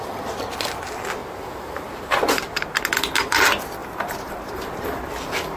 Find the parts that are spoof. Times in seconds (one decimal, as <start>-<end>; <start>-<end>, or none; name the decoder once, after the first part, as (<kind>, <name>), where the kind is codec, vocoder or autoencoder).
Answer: 1.2-2.7 (vocoder, BigVGAN v2); 3.8-5.0